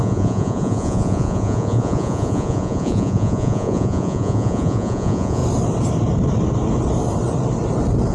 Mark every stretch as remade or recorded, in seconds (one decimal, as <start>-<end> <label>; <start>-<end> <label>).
0.0-5.4 remade; 5.4-8.1 recorded